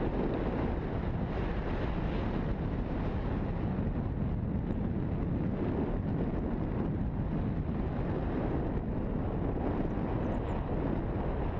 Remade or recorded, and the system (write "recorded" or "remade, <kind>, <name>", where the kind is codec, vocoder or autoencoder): recorded